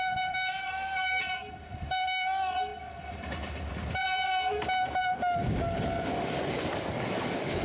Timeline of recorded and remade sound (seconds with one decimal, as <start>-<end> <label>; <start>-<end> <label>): 0.0-0.6 recorded; 0.6-1.2 remade; 1.2-7.6 recorded